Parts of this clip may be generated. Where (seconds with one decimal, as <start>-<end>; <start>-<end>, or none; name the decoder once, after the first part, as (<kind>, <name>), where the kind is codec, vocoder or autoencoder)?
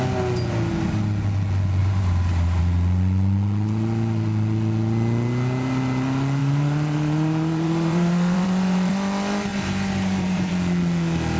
1.8-2.6 (vocoder, BigVGAN v2); 6.4-8.9; 9.5-10.5